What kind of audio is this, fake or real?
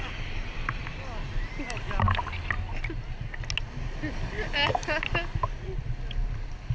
real